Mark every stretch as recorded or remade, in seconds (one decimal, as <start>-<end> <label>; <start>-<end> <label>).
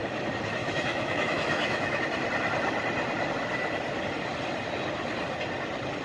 0.0-0.6 recorded; 0.6-2.0 remade; 2.0-6.0 recorded